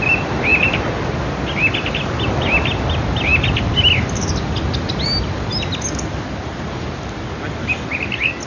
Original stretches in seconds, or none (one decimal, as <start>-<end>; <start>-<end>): 0.0-8.5